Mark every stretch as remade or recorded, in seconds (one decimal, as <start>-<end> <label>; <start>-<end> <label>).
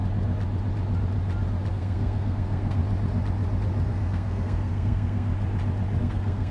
0.0-1.7 recorded; 1.7-2.8 remade; 2.8-3.9 recorded; 3.9-5.3 remade; 5.3-6.0 recorded; 6.0-6.5 remade